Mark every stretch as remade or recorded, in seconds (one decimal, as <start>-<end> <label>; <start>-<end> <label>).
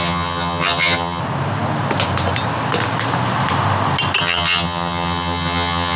0.0-1.2 remade; 1.2-4.2 recorded; 4.2-6.0 remade